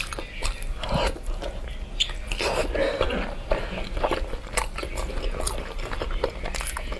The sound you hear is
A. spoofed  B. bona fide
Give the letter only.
B